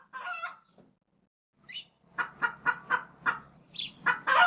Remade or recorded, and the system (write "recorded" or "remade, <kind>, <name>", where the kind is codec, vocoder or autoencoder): recorded